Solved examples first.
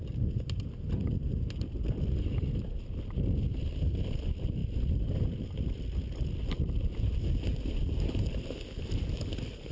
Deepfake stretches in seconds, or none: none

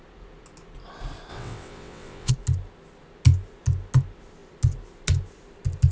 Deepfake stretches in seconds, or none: 1.3-2.3 (vocoder, WaveNeXt)

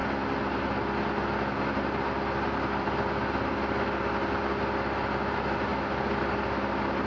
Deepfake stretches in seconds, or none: none

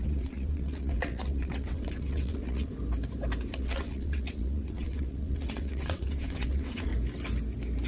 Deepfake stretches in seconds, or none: 0.0-2.7 (vocoder, WaveNeXt); 3.5-6.9

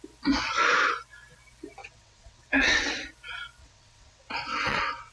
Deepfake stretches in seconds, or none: 1.8-3.0 (vocoder, WaveNeXt); 3.6-5.1

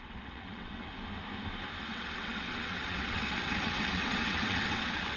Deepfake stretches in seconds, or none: 0.0-0.9 (vocoder, WaveNeXt); 1.8-5.2

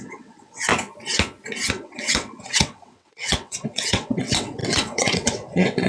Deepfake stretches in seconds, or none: 0.0-0.7 (vocoder, WaveNeXt); 1.7-5.9